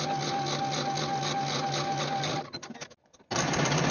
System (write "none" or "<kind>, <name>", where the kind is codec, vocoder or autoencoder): none